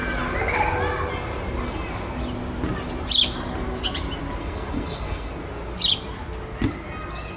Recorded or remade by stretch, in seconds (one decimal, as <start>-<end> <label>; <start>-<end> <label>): 0.0-4.4 recorded; 4.4-5.3 remade; 5.3-7.4 recorded